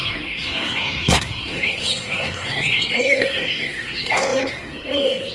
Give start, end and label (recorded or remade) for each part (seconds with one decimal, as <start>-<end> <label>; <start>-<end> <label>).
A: 0.0-5.3 remade